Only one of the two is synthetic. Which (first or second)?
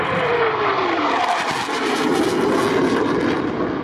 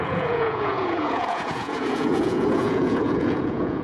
second